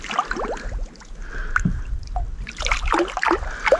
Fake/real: real